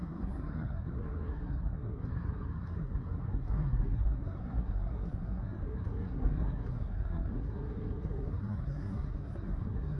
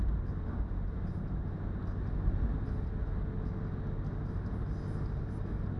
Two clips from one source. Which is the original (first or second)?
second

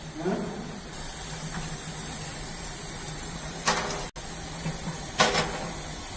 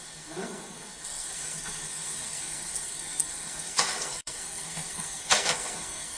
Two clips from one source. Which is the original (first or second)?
first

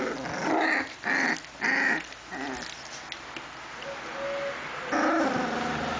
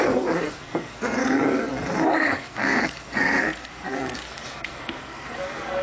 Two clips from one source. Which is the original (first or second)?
first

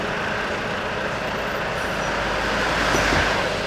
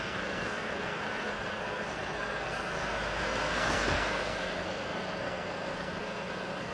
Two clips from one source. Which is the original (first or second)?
first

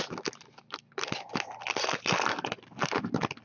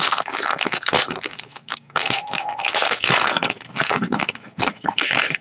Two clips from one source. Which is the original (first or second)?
first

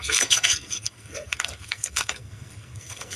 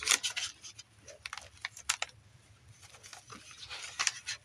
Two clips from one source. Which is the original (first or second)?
second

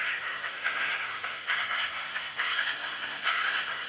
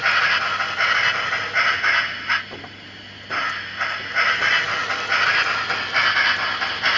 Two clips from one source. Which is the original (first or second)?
second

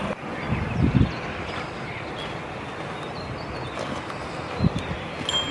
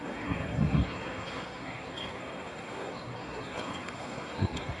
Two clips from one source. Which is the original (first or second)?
first